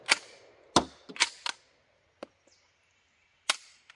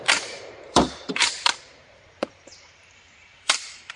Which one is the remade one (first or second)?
second